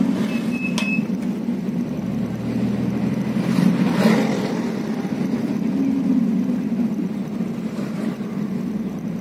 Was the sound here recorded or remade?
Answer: recorded